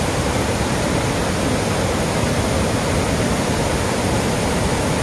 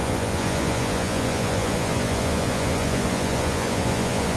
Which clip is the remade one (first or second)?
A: second